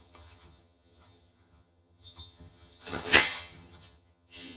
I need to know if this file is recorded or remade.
remade